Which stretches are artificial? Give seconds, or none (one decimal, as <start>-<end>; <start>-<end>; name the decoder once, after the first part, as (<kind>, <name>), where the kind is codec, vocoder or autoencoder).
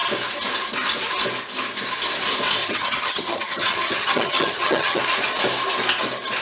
2.6-5.0 (vocoder, HiFi-GAN)